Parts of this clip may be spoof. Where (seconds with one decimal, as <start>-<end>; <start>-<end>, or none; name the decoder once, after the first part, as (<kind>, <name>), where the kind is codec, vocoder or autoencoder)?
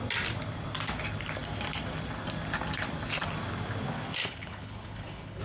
4.2-5.4 (codec, HILCodec)